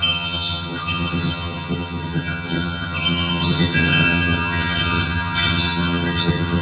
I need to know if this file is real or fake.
fake